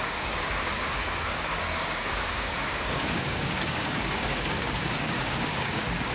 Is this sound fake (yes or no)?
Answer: yes